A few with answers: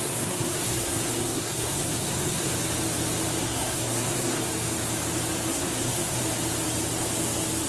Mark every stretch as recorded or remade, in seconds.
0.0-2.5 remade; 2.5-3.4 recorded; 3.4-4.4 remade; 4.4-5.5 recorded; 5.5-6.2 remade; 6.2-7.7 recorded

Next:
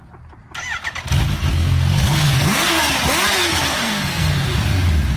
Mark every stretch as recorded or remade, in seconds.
0.0-1.5 recorded; 1.5-2.8 remade; 2.8-3.4 recorded; 3.4-4.5 remade; 4.5-5.2 recorded

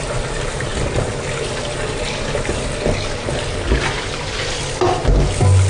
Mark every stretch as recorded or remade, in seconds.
0.0-5.7 recorded